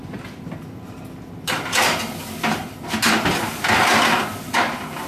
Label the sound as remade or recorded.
remade